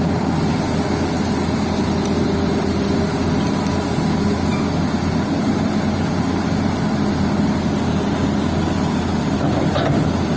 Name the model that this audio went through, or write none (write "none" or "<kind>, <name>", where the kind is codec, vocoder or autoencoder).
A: none